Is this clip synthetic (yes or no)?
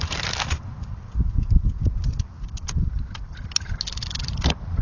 no